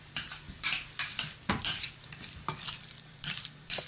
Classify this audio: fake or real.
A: fake